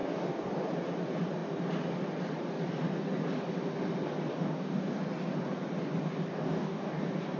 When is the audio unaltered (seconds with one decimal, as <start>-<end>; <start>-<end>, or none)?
0.5-4.3; 4.9-6.3; 7.0-7.4